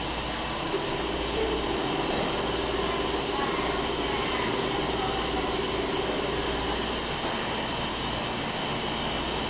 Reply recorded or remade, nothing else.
recorded